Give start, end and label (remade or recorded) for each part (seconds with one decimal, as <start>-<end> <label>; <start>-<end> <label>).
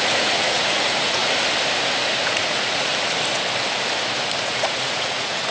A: 0.0-1.2 remade; 1.2-2.2 recorded; 2.2-2.9 remade; 2.9-4.4 recorded; 4.4-5.5 remade